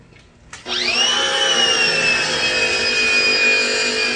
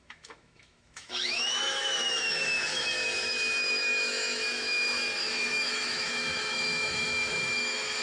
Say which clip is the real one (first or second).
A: first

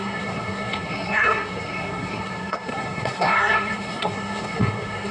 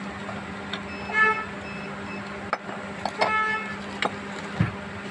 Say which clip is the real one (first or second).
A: second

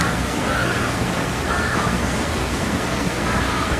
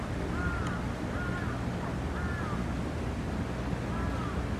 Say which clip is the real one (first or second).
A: second